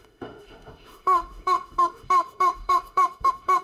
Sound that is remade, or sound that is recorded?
remade